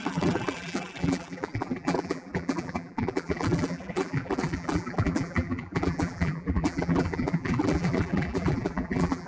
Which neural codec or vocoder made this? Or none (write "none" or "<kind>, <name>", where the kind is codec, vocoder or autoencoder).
vocoder, BigVGAN v2